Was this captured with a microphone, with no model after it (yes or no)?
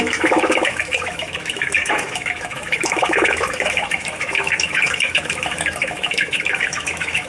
no